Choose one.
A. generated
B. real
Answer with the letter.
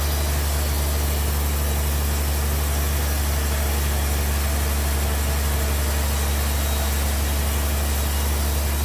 B